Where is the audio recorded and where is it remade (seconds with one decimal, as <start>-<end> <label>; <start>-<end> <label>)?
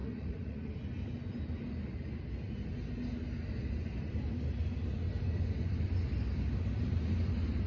0.0-0.7 remade; 0.7-7.7 recorded